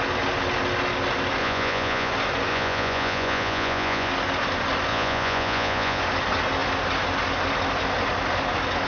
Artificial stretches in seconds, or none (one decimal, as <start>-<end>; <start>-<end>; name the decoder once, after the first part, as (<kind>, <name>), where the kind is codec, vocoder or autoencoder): 1.4-2.1 (vocoder, Vocos); 2.5-4.1; 4.9-6.0

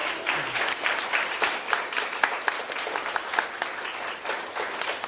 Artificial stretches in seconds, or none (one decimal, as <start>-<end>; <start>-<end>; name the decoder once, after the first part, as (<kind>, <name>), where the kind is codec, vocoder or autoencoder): none

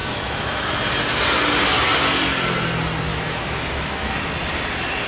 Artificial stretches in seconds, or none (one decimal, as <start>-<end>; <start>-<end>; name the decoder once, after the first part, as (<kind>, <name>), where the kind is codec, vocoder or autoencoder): 0.0-0.7 (autoencoder, DAC-VAE); 3.1-4.1

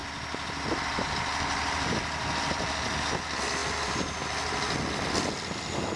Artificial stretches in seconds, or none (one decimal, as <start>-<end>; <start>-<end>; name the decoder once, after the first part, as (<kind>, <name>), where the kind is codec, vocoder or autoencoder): none

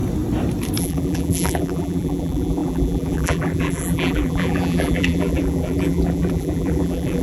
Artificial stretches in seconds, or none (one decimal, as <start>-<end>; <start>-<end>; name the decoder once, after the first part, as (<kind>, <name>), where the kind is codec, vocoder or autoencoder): 0.8-7.2 (vocoder, BigVGAN v2)